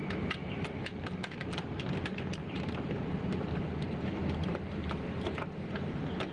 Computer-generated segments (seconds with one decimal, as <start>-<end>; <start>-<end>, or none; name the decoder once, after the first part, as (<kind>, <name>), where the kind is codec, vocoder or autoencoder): 0.4-1.5 (vocoder, BigVGAN v2); 2.4-6.3